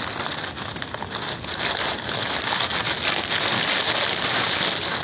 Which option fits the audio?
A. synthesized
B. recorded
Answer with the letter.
B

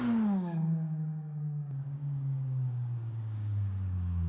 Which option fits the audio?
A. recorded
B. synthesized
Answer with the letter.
B